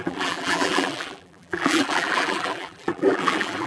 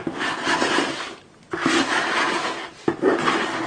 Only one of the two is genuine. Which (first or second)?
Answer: second